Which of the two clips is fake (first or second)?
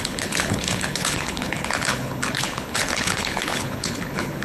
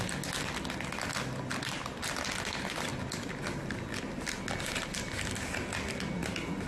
first